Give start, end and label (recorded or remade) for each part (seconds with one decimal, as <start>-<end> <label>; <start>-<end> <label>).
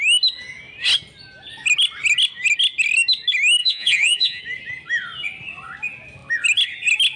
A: 0.0-3.6 recorded; 3.6-4.4 remade; 4.4-7.2 recorded